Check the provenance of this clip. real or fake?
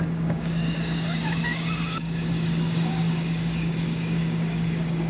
fake